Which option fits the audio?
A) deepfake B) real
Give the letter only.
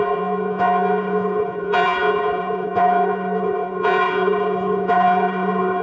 A